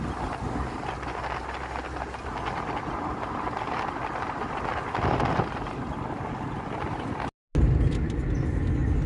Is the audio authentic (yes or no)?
yes